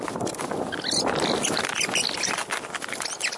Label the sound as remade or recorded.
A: recorded